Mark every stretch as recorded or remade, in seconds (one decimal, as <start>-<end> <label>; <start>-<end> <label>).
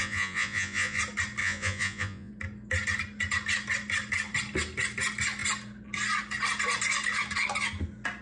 0.0-1.0 remade; 1.0-1.4 recorded; 1.4-2.3 remade; 2.3-8.2 recorded